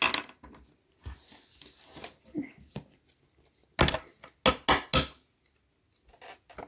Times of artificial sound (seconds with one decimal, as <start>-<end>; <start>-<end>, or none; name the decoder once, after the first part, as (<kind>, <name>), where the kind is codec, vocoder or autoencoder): none